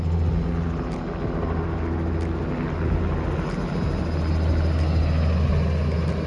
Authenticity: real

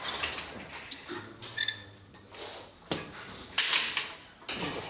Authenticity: real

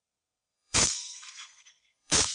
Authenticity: fake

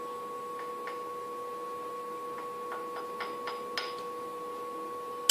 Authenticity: real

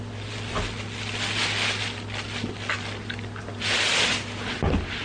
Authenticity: real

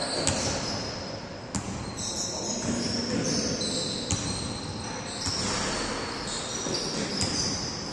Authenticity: real